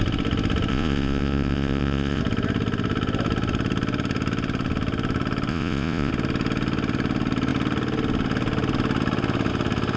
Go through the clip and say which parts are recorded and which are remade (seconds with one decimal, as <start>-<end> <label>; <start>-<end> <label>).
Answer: 0.0-0.7 recorded; 0.7-2.2 remade; 2.2-5.5 recorded; 5.5-6.1 remade; 6.1-10.0 recorded